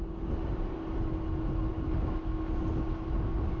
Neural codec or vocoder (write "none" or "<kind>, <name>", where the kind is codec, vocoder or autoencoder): none